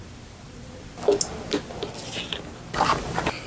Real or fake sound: real